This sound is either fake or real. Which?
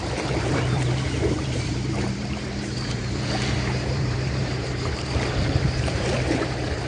fake